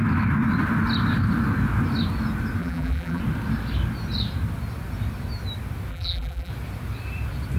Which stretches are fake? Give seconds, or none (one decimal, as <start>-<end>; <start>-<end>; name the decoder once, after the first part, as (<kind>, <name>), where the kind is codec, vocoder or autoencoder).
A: 2.6-3.2 (vocoder, BigVGAN v2); 5.9-6.5